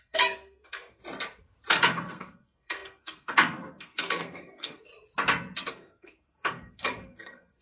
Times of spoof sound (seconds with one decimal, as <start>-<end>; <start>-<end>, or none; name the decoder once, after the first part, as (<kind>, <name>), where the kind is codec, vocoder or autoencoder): 0.0-1.0 (codec, SNAC); 1.7-4.9; 5.7-7.6